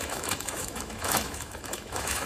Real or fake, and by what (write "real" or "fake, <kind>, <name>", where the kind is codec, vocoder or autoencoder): fake, autoencoder, DAC-VAE